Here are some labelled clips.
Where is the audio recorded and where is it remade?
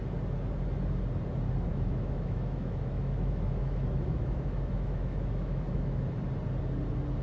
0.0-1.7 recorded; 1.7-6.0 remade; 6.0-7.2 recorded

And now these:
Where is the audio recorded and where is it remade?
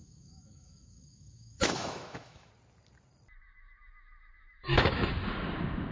0.0-2.5 remade; 2.5-4.5 recorded; 4.5-5.1 remade; 5.1-5.9 recorded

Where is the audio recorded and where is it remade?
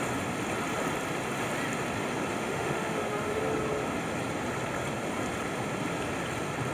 0.0-2.3 recorded; 2.3-3.4 remade; 3.4-6.7 recorded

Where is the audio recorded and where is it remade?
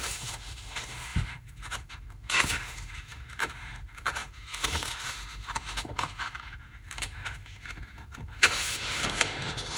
0.0-9.8 remade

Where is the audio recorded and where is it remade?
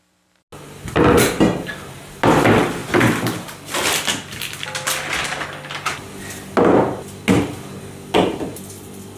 0.0-9.2 recorded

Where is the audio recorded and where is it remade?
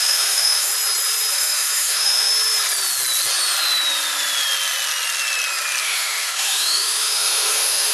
0.0-0.7 remade; 0.7-1.3 recorded; 1.3-2.3 remade; 2.3-5.8 recorded; 5.8-7.9 remade